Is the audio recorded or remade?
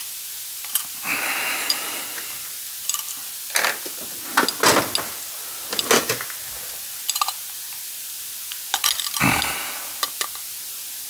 recorded